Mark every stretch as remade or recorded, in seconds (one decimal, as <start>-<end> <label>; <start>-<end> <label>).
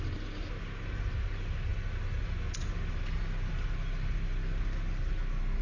0.0-5.6 recorded